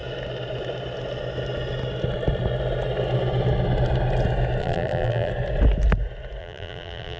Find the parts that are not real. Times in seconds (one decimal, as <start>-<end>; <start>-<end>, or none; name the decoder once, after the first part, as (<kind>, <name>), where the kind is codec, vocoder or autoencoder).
4.6-5.3 (vocoder, BigVGAN v2); 6.4-7.2